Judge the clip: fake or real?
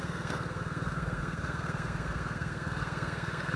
fake